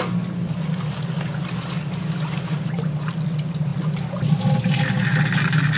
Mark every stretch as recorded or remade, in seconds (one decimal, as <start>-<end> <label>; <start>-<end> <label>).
0.0-5.8 recorded